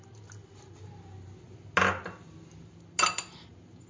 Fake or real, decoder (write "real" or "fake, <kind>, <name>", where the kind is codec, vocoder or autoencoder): real